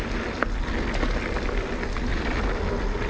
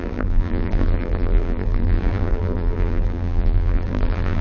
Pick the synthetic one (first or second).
second